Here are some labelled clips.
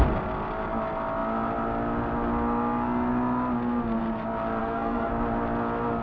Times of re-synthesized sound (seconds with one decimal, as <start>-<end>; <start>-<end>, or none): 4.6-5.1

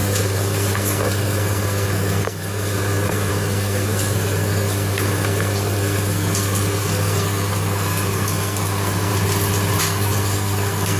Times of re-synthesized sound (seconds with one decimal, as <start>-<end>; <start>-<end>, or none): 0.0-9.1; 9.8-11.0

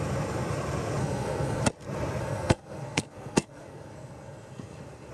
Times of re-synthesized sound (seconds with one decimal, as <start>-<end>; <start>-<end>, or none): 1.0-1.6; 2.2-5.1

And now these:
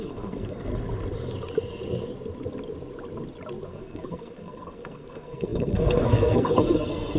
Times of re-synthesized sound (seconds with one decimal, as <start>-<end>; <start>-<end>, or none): 0.0-0.7; 3.7-7.2

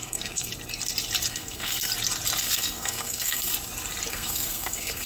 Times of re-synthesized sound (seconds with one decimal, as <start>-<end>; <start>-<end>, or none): 0.0-0.5; 1.3-1.9; 2.4-3.5; 4.1-5.1

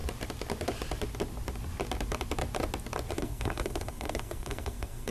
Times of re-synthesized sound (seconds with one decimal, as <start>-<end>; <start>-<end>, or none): 3.1-5.1